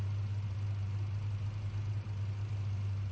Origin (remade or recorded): recorded